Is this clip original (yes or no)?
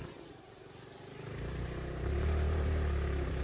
no